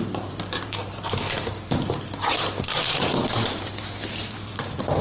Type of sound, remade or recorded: remade